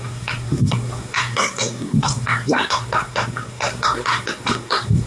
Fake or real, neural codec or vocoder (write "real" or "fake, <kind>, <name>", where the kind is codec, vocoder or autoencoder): fake, codec, SNAC